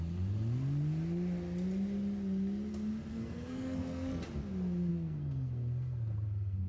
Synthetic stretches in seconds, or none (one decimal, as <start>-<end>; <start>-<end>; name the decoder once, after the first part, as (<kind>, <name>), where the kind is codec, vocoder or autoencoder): 3.1-4.2 (codec, SNAC); 4.9-6.7